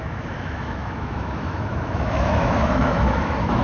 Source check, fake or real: fake